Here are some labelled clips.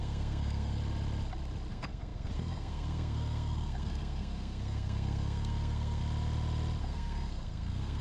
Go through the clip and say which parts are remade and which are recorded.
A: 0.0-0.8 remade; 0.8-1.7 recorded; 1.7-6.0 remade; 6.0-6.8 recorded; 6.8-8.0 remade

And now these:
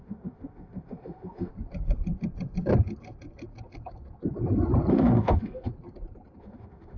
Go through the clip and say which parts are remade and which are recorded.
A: 0.0-1.5 remade; 1.5-4.9 recorded; 4.9-5.7 remade; 5.7-6.4 recorded; 6.4-7.0 remade